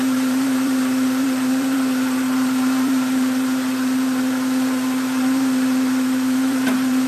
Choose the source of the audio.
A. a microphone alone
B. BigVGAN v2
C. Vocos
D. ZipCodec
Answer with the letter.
B